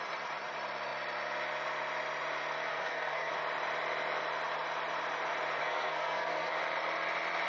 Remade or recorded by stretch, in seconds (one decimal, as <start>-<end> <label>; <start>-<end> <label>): 0.0-2.7 recorded; 2.7-3.3 remade; 3.3-5.6 recorded; 5.6-6.6 remade; 6.6-7.5 recorded

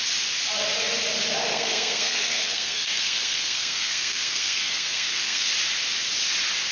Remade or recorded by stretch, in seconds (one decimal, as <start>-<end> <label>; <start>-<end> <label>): 0.0-1.5 recorded; 1.5-5.5 remade; 5.5-6.7 recorded

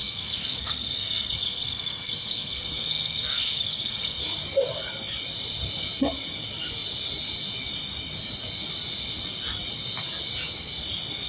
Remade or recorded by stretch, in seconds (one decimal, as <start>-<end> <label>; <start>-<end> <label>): 0.0-4.2 remade; 4.2-11.3 recorded

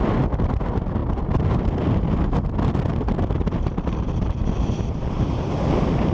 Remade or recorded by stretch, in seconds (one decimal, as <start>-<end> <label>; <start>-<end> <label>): 0.0-6.1 recorded

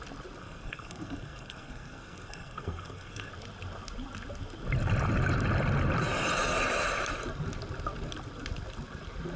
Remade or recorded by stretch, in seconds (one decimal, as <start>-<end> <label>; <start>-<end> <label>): 0.0-0.4 recorded; 0.4-3.3 remade; 3.3-9.4 recorded